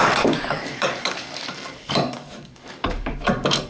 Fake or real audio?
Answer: fake